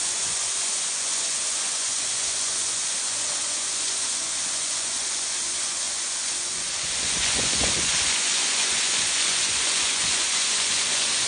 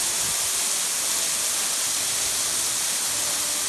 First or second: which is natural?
second